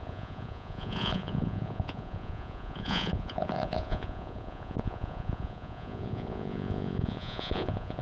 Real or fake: fake